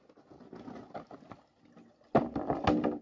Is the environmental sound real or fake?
real